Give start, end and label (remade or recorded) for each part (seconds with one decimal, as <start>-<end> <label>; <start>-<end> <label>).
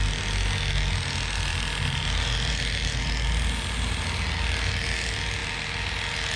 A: 0.0-6.4 recorded